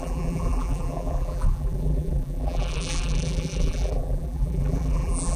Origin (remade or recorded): remade